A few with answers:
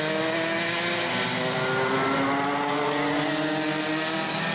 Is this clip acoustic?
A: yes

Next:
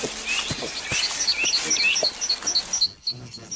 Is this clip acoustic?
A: yes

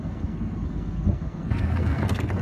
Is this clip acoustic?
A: no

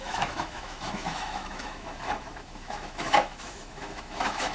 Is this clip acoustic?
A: no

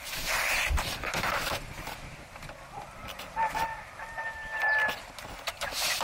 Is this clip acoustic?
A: no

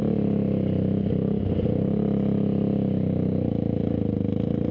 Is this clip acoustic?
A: yes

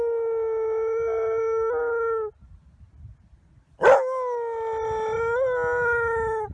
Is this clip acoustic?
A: yes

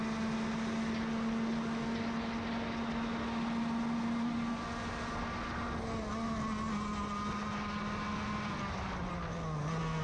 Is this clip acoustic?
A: yes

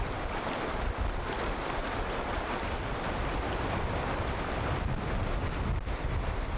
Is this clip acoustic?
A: yes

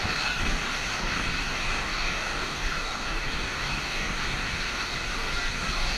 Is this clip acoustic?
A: no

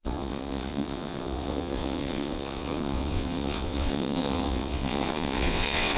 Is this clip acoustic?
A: no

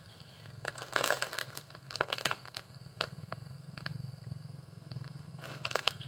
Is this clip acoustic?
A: no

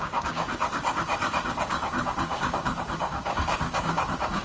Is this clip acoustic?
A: no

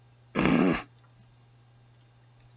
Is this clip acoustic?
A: yes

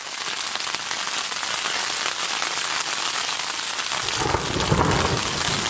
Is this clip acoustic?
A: yes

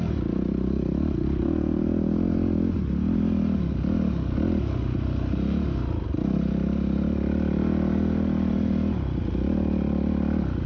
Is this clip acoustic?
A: yes